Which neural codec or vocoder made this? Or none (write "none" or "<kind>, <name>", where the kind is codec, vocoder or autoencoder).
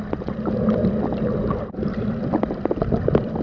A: none